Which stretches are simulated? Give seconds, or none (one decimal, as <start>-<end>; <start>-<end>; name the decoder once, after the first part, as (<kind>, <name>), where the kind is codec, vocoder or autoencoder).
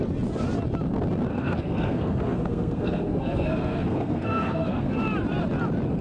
1.3-4.9 (codec, SNAC)